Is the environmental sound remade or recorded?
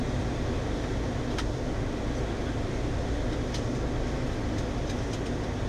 recorded